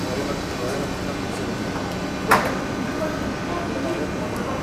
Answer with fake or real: real